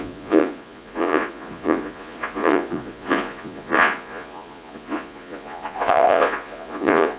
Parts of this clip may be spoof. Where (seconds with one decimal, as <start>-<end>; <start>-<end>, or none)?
0.0-7.2